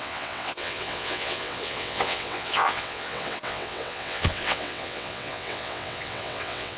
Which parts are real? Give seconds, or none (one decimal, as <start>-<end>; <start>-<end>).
none